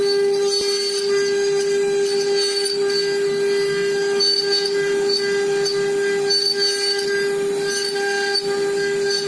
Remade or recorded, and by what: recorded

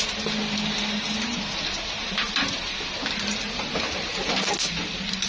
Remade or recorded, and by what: recorded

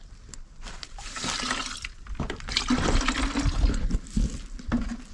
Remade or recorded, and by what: remade, vocoder, BigVGAN v2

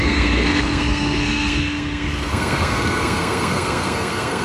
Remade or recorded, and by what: remade, codec, SNAC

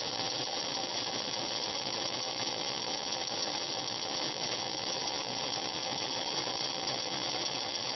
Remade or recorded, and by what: remade, vocoder, WaveNeXt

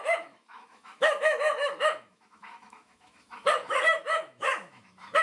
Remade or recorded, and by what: remade, autoencoder, DAC-VAE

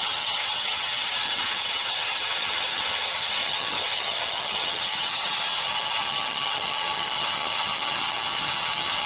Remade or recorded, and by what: remade, vocoder, HiFi-GAN